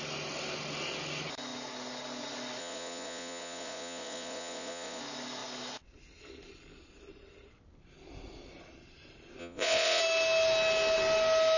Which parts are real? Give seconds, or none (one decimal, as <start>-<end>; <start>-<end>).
0.0-2.6; 5.0-9.4; 10.0-11.6